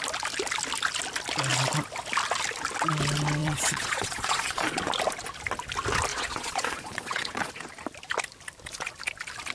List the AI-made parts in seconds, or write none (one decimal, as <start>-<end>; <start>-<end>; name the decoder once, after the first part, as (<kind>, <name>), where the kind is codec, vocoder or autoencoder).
3.4-4.8 (vocoder, Vocos); 6.1-7.5